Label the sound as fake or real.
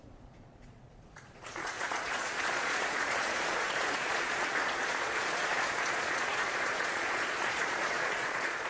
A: fake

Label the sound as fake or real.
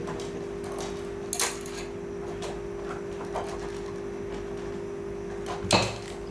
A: real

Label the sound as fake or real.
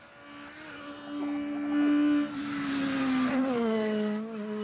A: real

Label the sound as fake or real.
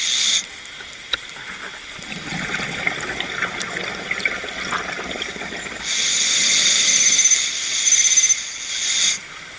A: real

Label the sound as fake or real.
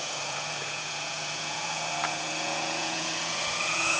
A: fake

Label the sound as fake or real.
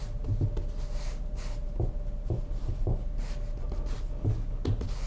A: real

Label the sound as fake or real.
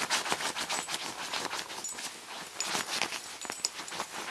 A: real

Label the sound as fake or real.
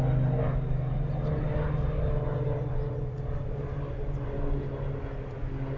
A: real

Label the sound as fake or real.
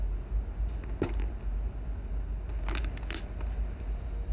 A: real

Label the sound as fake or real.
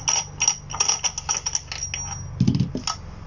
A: real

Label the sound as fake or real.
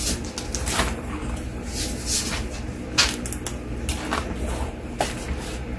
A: real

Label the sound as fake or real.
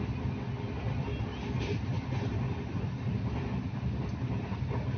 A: real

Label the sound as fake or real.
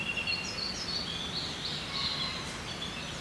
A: real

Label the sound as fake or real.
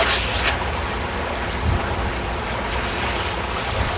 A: real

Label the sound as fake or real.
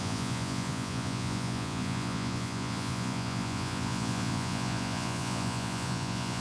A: fake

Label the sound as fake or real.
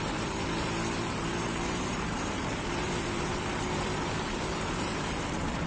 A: fake